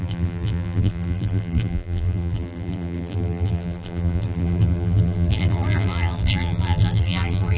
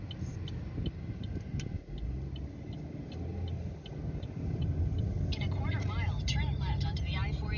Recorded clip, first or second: second